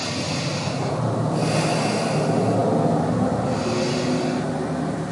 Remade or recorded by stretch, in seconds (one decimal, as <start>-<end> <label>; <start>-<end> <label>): 0.0-5.1 recorded